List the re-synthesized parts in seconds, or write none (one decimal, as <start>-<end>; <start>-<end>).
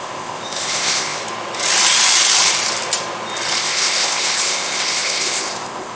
0.0-1.2; 3.6-6.0